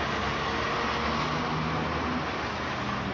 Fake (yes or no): no